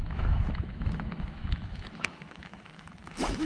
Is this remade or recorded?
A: remade